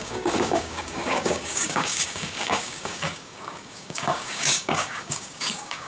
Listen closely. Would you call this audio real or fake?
fake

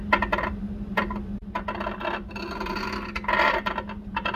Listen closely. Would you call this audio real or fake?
real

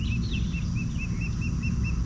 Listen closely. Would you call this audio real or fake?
real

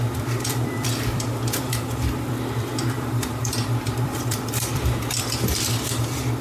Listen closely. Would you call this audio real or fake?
fake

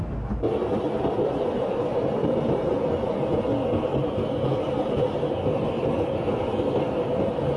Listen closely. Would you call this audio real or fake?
real